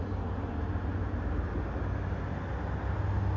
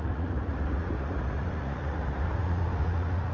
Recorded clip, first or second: first